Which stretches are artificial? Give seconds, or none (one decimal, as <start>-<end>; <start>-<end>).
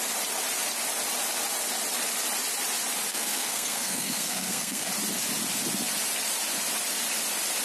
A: 3.1-4.9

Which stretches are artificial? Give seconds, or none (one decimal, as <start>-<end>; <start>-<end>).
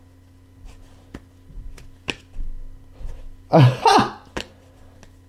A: none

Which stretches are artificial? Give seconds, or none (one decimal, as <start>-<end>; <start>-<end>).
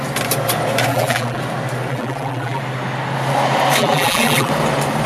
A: 0.9-1.4; 1.9-2.6; 3.8-4.5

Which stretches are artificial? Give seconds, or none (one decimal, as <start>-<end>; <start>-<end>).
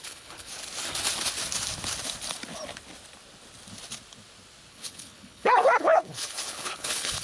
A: 0.0-0.5; 4.7-7.2